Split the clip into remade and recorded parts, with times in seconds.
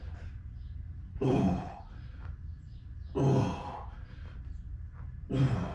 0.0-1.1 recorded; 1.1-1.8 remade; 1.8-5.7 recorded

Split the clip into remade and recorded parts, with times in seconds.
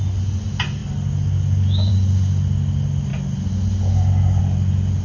0.0-5.0 recorded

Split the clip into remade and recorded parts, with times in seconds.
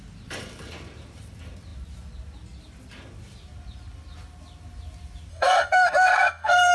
0.0-5.3 recorded; 5.3-6.7 remade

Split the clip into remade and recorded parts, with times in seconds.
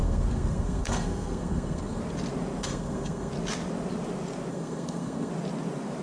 0.0-2.0 remade; 2.0-2.6 recorded; 2.6-3.3 remade; 3.3-4.5 recorded; 4.5-5.3 remade; 5.3-6.0 recorded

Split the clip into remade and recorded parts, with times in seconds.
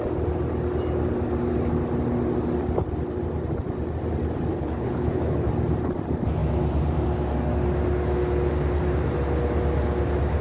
0.0-4.5 recorded; 4.5-5.5 remade; 5.5-10.4 recorded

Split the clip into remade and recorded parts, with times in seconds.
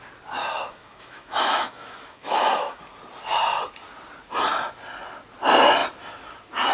0.0-0.4 recorded; 0.4-2.8 remade; 2.8-6.7 recorded